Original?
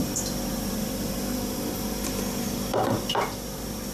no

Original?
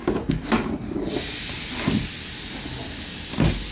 yes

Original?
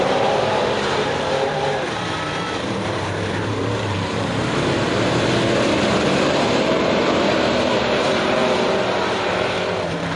no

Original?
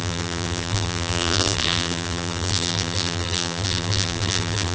no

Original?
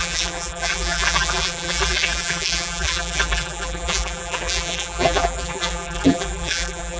no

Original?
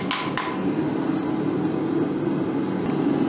yes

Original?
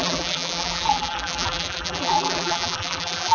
no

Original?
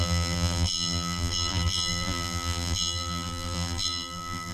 no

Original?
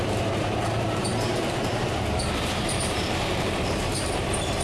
no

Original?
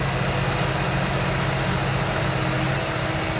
yes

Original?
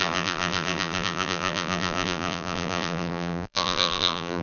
no